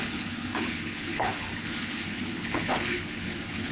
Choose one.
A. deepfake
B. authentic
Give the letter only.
A